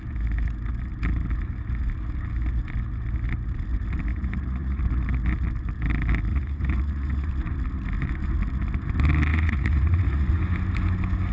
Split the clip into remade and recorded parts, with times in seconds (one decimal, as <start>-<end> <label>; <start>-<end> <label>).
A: 0.0-4.1 recorded; 4.1-4.8 remade; 4.8-6.3 recorded; 6.3-7.3 remade; 7.3-9.3 recorded; 9.3-10.3 remade; 10.3-11.3 recorded